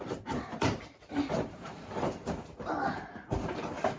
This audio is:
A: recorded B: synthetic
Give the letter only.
B